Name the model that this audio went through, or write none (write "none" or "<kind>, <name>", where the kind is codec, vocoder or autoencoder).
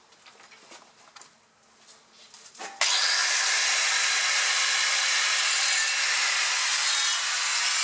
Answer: none